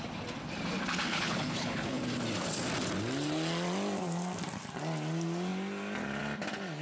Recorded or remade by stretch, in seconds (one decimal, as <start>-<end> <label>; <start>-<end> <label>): 0.0-1.1 recorded; 1.1-2.0 remade; 2.0-6.8 recorded

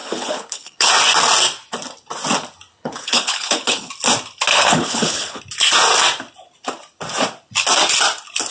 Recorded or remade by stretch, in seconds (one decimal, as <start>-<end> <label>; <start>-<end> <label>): 0.0-0.9 remade; 0.9-2.7 recorded; 2.7-3.9 remade; 3.9-4.5 recorded; 4.5-5.4 remade; 5.4-8.5 recorded

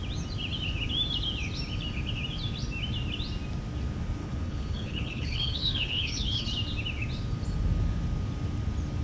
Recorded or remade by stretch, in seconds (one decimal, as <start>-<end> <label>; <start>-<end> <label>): 0.0-4.2 recorded; 4.2-6.4 remade; 6.4-9.0 recorded

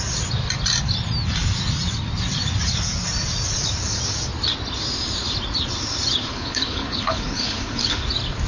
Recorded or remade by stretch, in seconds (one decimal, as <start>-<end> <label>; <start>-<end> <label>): 0.0-6.3 recorded; 6.3-8.0 remade; 8.0-8.5 recorded